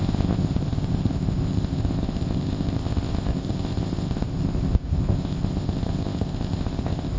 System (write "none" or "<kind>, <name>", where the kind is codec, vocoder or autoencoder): codec, ZipCodec